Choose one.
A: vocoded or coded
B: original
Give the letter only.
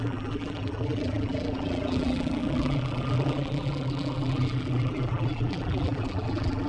A